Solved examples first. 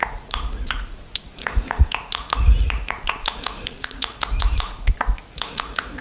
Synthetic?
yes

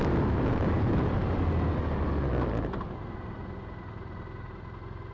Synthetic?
no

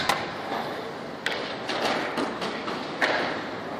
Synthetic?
no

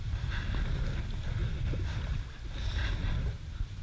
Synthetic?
no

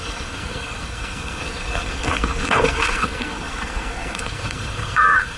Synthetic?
yes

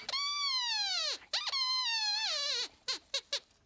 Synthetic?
no